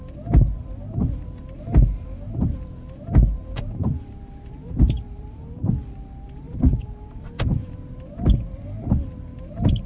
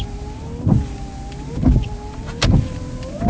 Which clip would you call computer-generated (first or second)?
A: first